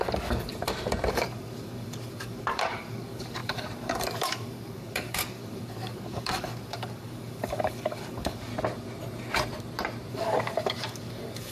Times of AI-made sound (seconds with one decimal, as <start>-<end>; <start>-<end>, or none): 0.0-0.5; 1.1-8.5; 10.1-11.5